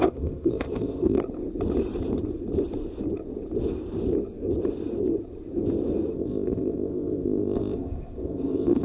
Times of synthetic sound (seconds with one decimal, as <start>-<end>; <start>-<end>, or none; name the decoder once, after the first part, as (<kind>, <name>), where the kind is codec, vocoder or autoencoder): 0.0-1.2 (codec, ZipCodec); 6.1-8.8